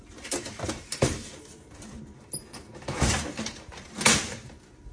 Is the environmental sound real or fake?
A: fake